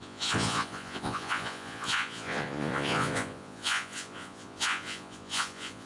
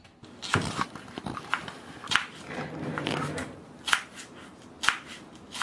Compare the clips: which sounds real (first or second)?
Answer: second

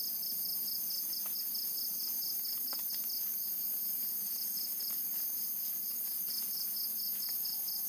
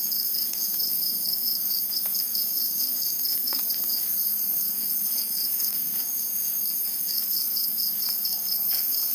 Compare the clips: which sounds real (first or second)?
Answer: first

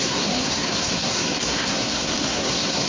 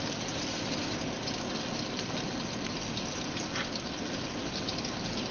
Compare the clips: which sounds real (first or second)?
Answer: second